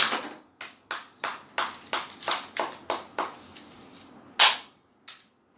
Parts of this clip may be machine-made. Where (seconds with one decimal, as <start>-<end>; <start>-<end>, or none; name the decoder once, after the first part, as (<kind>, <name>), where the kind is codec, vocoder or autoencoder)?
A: none